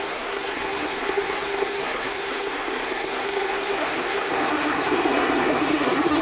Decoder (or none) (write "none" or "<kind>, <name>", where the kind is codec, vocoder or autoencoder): codec, SNAC